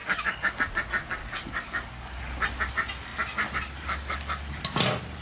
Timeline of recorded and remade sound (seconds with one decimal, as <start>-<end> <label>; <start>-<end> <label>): 0.0-0.6 remade; 0.6-1.2 recorded; 1.2-2.2 remade; 2.2-5.2 recorded